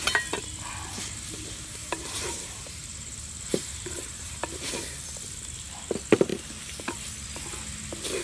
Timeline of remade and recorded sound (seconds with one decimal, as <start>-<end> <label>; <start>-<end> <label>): 0.0-1.8 recorded; 1.8-4.8 remade; 4.8-8.2 recorded